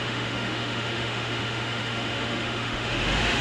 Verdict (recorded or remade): remade